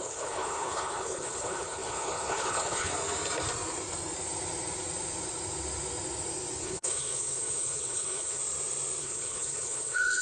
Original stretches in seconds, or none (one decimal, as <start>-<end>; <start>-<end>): 2.9-6.6; 8.4-9.0

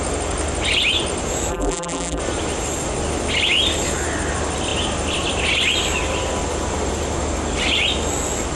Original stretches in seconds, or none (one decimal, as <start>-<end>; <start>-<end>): 0.0-1.5; 2.2-8.6

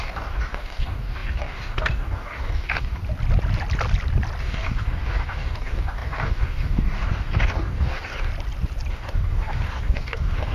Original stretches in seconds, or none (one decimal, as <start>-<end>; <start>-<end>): 3.0-4.4; 8.3-8.9

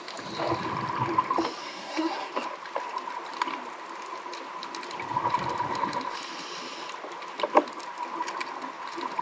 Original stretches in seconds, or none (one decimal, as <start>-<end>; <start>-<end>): 0.0-1.6; 2.3-9.2

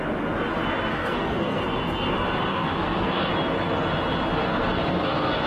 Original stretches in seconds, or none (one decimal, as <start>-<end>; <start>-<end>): 0.0-0.9; 1.6-2.5; 3.3-4.5

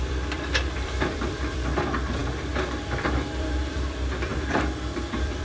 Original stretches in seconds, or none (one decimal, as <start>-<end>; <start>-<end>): none

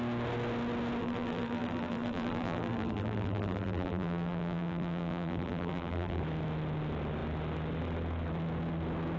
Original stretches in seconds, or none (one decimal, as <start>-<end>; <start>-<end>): 0.0-1.0; 6.2-9.2